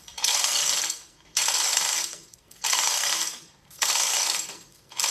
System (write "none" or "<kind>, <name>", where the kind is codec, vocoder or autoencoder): codec, SNAC